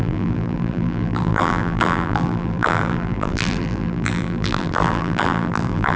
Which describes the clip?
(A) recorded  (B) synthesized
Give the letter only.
B